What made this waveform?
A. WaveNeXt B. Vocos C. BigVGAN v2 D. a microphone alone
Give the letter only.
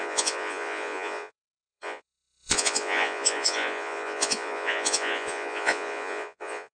B